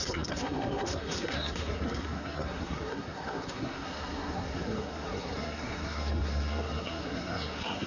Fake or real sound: fake